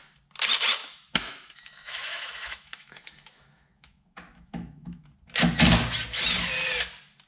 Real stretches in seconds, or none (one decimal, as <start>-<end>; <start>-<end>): 0.0-0.8; 5.1-7.3